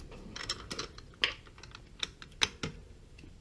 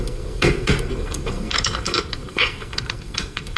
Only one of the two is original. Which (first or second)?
first